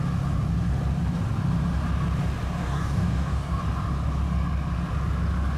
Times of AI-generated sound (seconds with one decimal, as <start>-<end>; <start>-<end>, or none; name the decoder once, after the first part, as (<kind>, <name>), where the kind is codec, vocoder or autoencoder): 2.6-3.6 (codec, DAC)